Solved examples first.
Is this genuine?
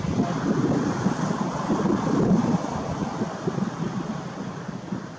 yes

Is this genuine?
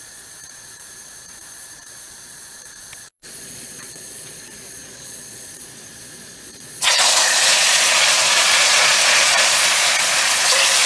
no